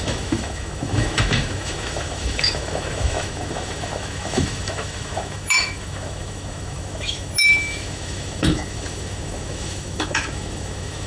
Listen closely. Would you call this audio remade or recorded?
remade